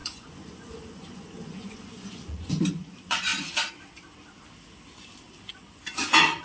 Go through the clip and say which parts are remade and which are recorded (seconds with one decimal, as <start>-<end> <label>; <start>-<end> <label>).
0.0-3.3 remade; 3.3-5.5 recorded; 5.5-6.4 remade